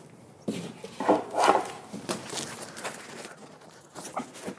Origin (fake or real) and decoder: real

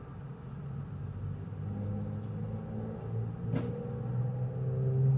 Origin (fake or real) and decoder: real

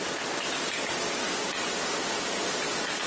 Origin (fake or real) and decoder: fake, vocoder, BigVGAN v2